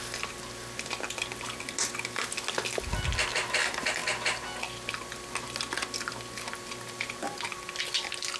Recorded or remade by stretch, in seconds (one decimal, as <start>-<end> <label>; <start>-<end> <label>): 0.0-8.4 recorded

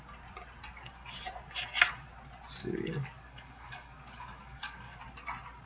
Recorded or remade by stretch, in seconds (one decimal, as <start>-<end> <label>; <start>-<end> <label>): 0.0-2.6 recorded; 2.6-5.0 remade; 5.0-5.7 recorded

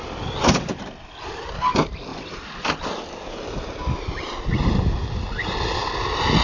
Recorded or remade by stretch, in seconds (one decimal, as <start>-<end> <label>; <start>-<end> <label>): 0.0-6.4 recorded

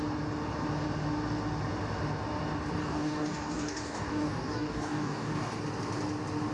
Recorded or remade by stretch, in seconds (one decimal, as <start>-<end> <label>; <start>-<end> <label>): 0.0-2.8 recorded; 2.8-5.6 remade; 5.6-6.5 recorded

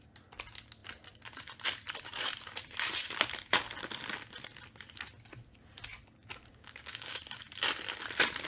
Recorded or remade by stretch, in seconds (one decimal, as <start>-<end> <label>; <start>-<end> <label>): 0.0-6.5 recorded; 6.5-7.2 remade; 7.2-8.5 recorded